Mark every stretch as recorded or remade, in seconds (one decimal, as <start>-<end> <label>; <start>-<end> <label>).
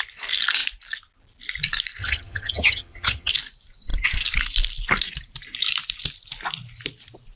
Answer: 0.0-2.0 recorded; 2.0-3.3 remade; 3.3-7.4 recorded